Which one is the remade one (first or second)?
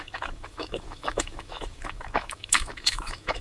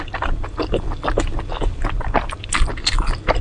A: first